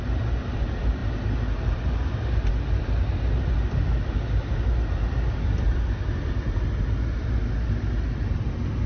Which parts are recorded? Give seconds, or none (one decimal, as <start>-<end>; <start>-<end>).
0.0-8.9